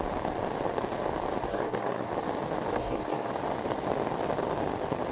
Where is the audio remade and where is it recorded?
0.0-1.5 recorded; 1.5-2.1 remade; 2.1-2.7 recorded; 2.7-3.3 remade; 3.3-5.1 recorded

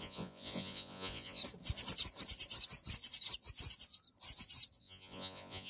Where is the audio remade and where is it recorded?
0.0-1.4 remade; 1.4-4.8 recorded; 4.8-5.7 remade

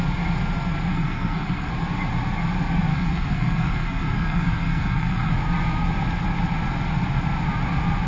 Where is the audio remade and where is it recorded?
0.0-0.9 recorded; 0.9-1.7 remade; 1.7-2.9 recorded; 2.9-5.3 remade; 5.3-8.1 recorded